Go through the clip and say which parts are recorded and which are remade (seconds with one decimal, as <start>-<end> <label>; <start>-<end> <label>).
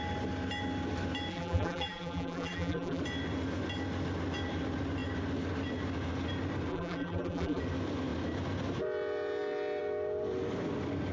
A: 0.0-1.3 recorded; 1.3-3.0 remade; 3.0-6.7 recorded; 6.7-7.6 remade; 7.6-11.1 recorded